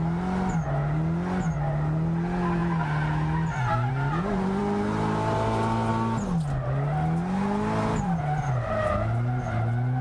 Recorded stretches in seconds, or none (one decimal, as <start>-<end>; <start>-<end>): 0.0-10.0